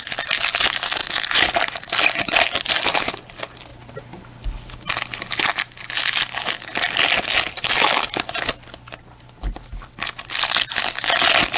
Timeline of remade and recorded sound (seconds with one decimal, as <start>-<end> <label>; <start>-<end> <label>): 0.0-11.6 recorded